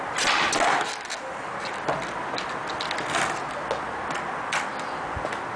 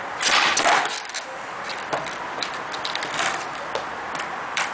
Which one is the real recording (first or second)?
first